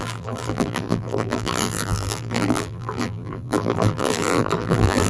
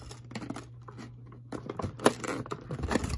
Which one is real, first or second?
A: second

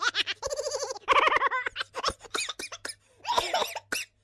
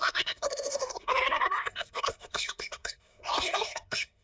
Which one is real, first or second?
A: first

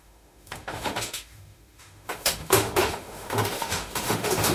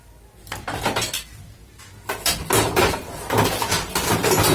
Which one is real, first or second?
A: second